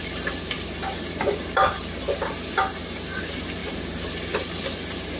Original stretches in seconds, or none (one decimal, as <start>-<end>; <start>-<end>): 0.0-5.2